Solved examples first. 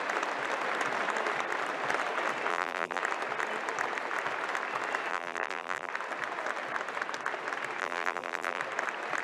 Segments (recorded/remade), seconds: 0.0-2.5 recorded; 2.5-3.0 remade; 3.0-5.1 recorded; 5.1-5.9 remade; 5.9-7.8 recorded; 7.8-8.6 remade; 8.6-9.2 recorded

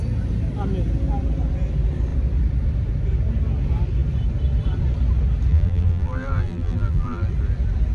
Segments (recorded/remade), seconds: 0.0-5.5 recorded; 5.5-7.3 remade; 7.3-7.9 recorded

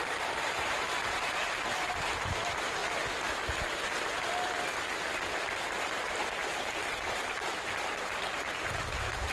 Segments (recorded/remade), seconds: 0.0-2.8 remade; 2.8-5.8 recorded; 5.8-9.3 remade

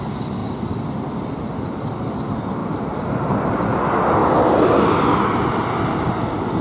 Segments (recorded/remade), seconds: 0.0-2.6 recorded; 2.6-3.4 remade; 3.4-4.2 recorded; 4.2-4.8 remade; 4.8-6.6 recorded

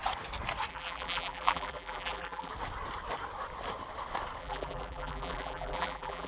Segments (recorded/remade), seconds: 0.0-0.7 recorded; 0.7-2.5 remade; 2.5-4.4 recorded; 4.4-6.3 remade

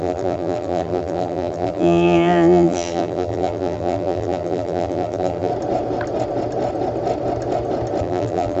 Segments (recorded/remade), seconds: 0.0-5.5 remade; 5.5-8.0 recorded; 8.0-8.6 remade